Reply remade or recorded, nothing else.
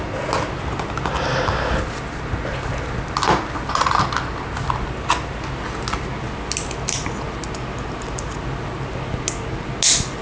recorded